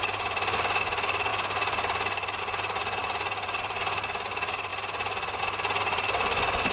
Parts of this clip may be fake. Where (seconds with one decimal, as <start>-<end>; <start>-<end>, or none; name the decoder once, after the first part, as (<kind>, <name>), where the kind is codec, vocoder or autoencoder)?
none